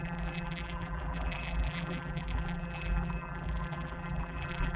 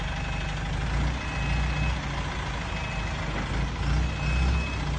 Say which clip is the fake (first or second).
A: first